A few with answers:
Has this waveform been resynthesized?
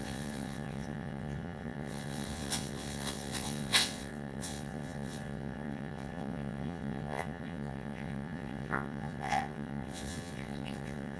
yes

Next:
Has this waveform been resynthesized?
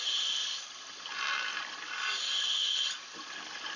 no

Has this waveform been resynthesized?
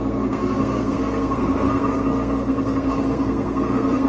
yes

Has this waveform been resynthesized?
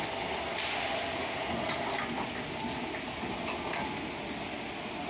no